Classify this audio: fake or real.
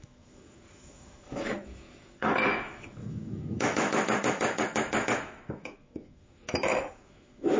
fake